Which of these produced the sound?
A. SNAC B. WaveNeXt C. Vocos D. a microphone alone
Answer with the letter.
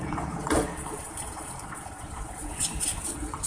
C